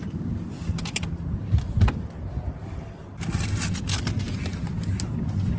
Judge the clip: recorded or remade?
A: recorded